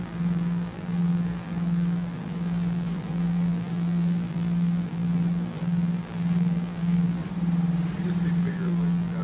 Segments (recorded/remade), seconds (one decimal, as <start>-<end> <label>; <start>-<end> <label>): 0.0-7.2 remade; 7.2-8.4 recorded; 8.4-9.2 remade